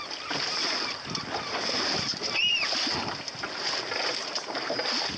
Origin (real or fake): real